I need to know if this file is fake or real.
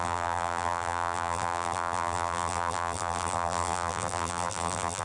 fake